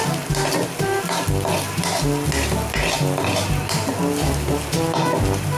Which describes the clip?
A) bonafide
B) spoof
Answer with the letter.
A